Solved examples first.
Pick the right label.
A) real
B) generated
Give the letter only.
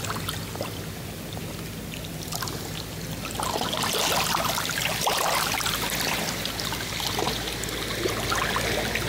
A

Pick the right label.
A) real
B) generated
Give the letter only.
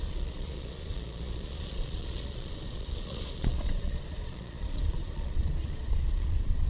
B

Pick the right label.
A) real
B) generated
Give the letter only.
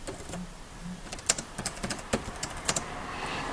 A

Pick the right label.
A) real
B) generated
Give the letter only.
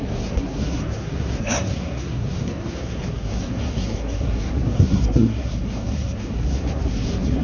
B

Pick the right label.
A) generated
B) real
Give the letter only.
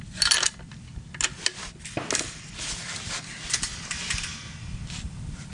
B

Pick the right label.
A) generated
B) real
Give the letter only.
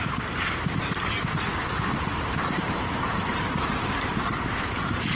A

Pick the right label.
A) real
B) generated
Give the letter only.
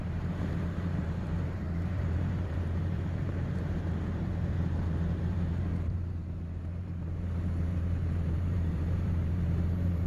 B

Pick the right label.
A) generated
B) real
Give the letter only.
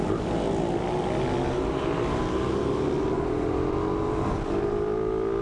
B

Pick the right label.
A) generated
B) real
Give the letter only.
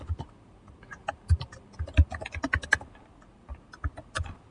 B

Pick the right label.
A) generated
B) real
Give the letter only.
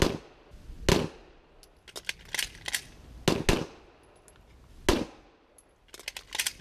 B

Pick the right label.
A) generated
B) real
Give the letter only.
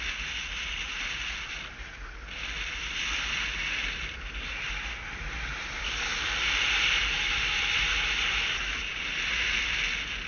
B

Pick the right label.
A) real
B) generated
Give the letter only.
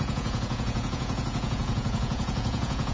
B